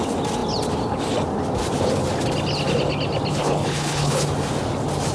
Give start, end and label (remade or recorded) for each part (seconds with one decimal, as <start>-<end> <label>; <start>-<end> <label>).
0.0-3.3 recorded; 3.3-4.2 remade; 4.2-5.1 recorded